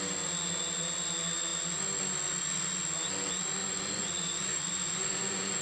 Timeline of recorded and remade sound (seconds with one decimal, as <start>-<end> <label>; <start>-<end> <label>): 0.0-3.6 recorded; 3.6-5.6 remade